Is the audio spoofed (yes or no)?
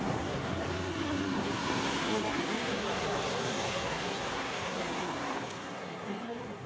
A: yes